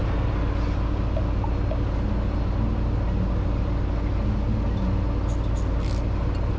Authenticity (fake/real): real